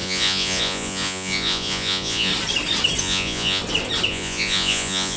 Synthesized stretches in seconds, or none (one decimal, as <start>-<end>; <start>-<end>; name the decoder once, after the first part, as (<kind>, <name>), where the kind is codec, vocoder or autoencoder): 0.0-2.3 (vocoder, Vocos); 3.0-3.6; 4.1-5.2